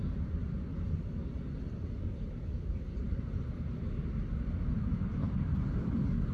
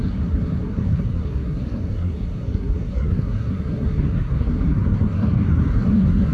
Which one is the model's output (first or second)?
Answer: second